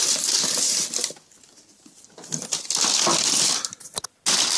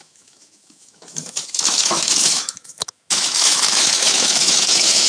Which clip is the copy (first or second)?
second